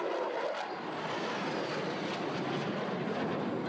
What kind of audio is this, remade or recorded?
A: recorded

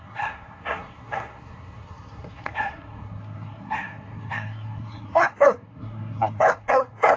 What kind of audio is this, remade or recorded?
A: remade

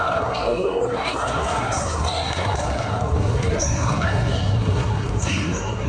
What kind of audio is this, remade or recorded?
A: remade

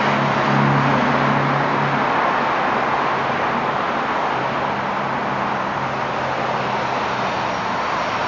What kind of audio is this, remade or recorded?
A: recorded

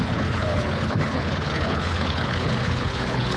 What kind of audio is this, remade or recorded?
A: remade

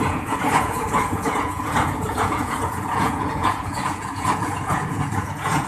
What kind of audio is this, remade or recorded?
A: remade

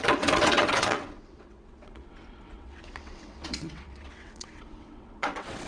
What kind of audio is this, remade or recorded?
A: remade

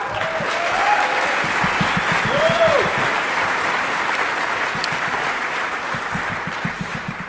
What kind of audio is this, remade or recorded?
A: recorded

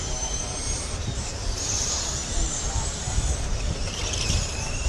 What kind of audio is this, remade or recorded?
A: remade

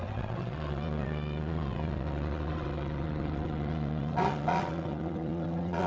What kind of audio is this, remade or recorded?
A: remade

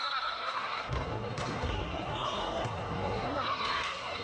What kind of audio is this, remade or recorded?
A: remade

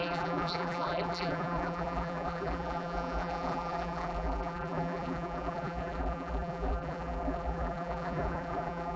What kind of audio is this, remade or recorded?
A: remade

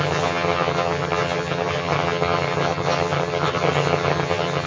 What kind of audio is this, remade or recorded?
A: remade